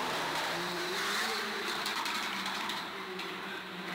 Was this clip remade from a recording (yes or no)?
yes